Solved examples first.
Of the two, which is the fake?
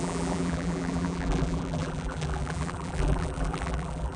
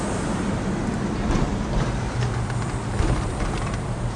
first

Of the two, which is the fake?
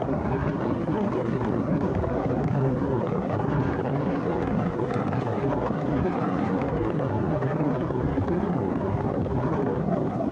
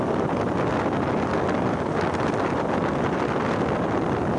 first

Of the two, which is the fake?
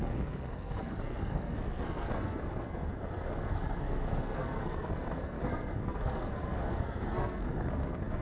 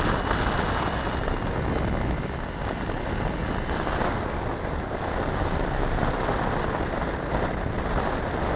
first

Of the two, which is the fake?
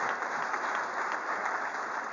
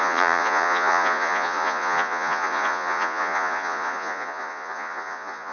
second